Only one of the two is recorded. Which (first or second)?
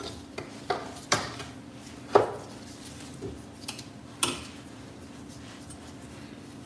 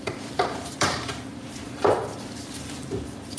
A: first